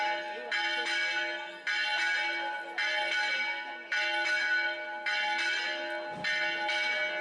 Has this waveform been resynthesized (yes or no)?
no